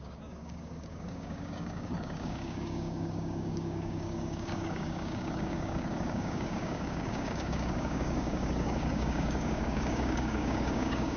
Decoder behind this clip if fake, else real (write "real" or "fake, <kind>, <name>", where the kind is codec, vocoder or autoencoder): fake, codec, DAC